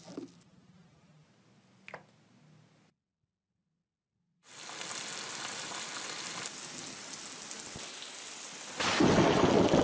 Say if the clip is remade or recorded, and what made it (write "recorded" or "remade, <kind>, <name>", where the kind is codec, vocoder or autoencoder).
recorded